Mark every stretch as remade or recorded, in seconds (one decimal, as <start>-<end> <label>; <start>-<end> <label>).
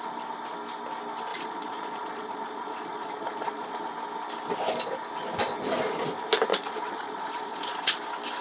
0.0-1.3 recorded; 1.3-3.8 remade; 3.8-6.5 recorded; 6.5-7.9 remade; 7.9-8.4 recorded